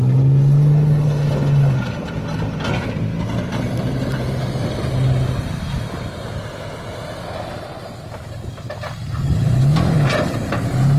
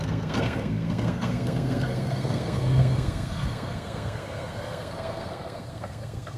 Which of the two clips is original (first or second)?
first